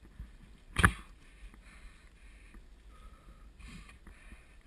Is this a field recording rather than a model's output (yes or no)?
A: yes